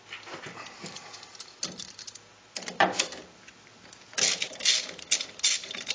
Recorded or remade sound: recorded